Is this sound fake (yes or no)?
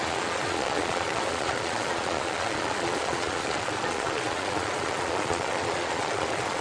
yes